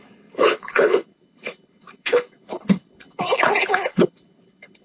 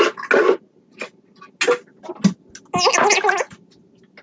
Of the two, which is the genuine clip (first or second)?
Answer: second